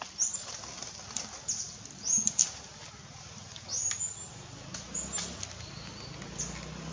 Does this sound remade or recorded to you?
recorded